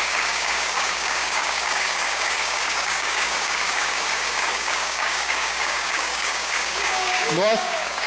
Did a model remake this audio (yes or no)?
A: yes